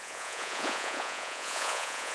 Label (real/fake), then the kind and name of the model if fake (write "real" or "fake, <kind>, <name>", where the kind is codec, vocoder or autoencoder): fake, vocoder, Vocos